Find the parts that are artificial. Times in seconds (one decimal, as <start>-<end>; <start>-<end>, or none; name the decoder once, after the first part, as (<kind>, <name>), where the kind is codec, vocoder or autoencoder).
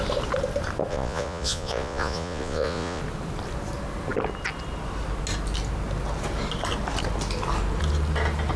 0.9-3.0 (vocoder, Vocos)